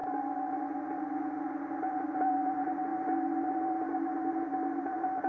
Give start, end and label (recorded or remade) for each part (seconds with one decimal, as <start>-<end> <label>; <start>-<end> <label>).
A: 0.0-5.3 recorded